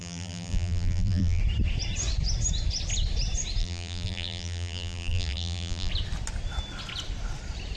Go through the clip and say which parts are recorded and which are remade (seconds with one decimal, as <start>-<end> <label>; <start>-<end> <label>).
0.0-1.4 remade; 1.4-3.6 recorded; 3.6-5.9 remade; 5.9-7.8 recorded